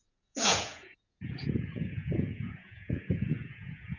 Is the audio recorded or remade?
remade